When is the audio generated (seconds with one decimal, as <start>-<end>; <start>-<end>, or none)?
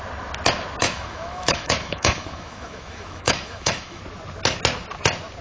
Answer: 0.8-4.0